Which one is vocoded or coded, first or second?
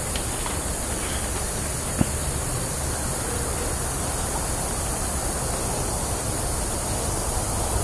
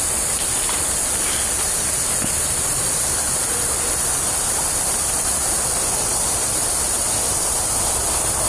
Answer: second